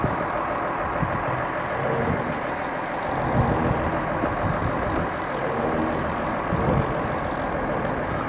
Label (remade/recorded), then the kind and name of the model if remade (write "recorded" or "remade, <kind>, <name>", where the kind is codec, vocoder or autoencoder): recorded